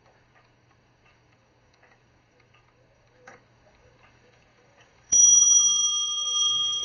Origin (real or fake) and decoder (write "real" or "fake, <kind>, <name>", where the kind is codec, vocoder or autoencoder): fake, codec, DAC